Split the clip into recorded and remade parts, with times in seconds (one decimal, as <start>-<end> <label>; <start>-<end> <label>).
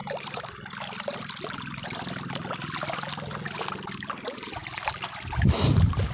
0.0-2.9 remade; 2.9-4.6 recorded; 4.6-5.4 remade; 5.4-6.1 recorded